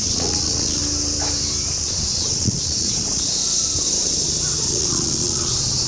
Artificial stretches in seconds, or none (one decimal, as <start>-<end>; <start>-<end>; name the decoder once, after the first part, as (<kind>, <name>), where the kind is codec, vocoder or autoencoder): 0.0-0.8 (vocoder, Vocos); 1.8-3.4; 4.0-5.9

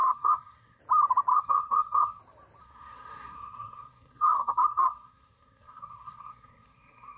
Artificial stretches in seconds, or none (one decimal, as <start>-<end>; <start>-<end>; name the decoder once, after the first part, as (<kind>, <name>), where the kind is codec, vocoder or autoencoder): 0.0-0.8 (codec, SNAC); 1.3-2.2; 2.6-7.2

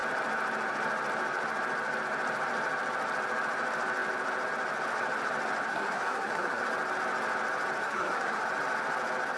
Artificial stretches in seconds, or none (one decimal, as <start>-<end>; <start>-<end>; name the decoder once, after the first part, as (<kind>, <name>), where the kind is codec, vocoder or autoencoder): 5.7-6.7 (codec, SNAC); 7.8-8.4

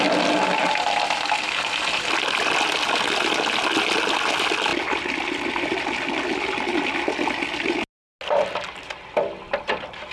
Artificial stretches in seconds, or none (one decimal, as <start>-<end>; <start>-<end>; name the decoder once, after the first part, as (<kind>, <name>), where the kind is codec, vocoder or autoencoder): none

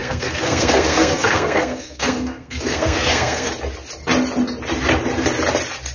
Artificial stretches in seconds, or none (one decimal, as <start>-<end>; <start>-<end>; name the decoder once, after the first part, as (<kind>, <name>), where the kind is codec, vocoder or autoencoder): 0.0-3.5 (codec, SNAC)

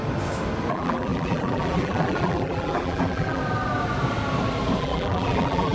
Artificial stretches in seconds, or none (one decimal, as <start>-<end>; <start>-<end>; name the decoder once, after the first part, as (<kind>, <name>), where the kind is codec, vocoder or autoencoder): 0.7-3.4 (vocoder, BigVGAN v2); 4.8-5.7

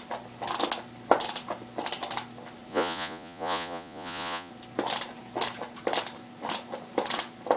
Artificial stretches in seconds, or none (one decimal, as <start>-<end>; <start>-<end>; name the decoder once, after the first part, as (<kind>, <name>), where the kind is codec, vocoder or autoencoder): 2.7-4.5 (vocoder, Vocos)